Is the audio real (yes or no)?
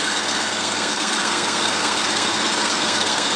no